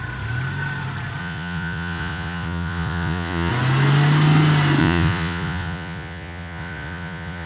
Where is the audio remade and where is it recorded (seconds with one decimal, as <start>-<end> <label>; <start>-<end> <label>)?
0.0-1.2 recorded; 1.2-3.5 remade; 3.5-4.8 recorded; 4.8-7.5 remade